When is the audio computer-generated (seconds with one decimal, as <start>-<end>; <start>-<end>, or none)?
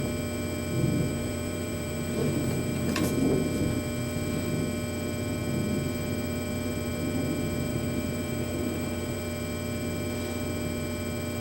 1.1-3.0; 7.7-9.2